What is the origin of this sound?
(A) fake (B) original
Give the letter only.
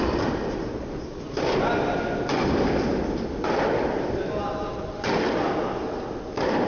B